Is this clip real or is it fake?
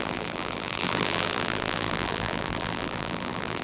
fake